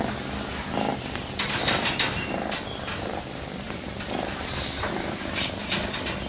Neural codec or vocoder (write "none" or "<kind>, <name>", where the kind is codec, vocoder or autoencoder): none